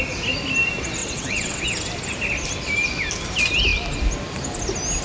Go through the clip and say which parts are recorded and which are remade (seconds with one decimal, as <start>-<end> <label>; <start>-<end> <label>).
0.0-1.0 recorded; 1.0-1.6 remade; 1.6-5.0 recorded